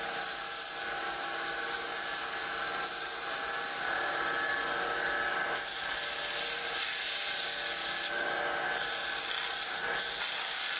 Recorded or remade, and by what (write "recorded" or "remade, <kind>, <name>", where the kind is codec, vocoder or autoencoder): recorded